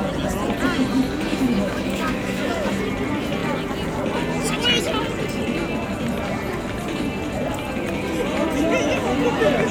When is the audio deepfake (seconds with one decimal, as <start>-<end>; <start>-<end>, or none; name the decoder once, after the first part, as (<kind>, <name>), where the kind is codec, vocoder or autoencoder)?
1.3-2.7 (autoencoder, DAC-VAE)